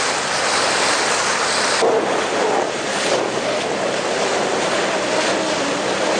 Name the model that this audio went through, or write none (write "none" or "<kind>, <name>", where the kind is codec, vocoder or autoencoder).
none